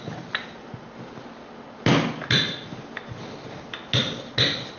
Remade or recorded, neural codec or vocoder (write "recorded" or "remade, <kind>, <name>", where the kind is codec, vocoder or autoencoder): recorded